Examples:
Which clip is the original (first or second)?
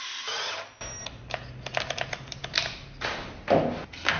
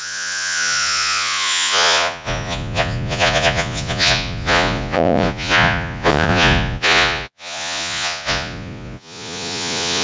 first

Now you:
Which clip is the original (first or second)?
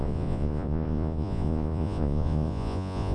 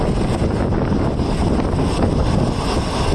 second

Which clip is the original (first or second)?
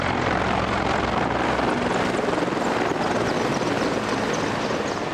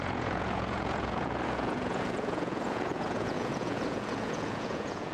first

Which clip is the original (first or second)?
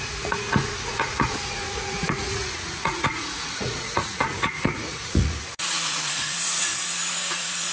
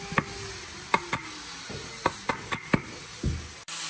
second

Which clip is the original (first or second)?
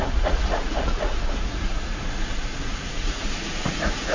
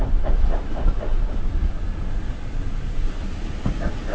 second